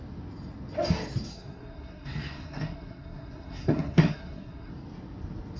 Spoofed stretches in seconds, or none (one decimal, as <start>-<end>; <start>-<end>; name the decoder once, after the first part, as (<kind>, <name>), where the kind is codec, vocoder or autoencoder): 1.3-4.7 (codec, SNAC)